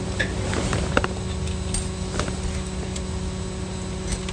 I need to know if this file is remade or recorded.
recorded